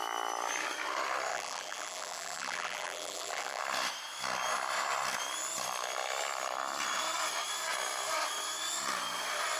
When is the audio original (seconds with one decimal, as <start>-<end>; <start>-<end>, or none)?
0.0-1.3; 3.6-9.6